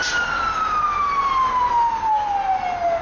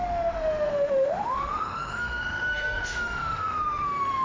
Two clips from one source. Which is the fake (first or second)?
second